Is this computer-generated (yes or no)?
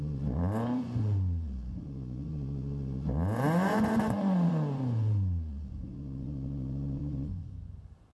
yes